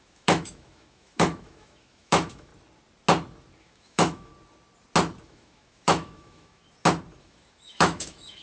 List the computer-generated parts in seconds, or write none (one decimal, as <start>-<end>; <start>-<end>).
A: 0.0-2.5; 3.6-4.3; 5.2-6.6; 7.2-8.4